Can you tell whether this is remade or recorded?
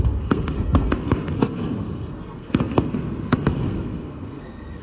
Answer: remade